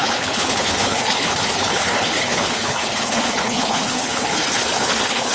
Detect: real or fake fake